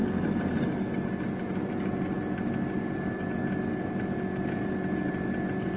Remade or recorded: recorded